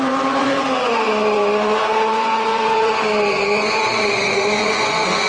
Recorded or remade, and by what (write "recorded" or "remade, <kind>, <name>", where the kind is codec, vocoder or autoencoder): remade, vocoder, Vocos